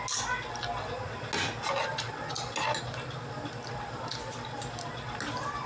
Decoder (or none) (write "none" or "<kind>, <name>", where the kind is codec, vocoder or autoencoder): none